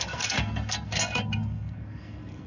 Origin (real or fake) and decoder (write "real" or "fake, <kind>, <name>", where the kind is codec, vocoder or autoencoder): fake, codec, SNAC